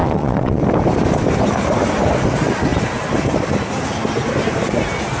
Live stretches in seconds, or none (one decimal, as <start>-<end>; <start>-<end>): 0.6-5.2